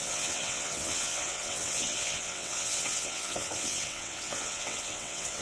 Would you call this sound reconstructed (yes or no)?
yes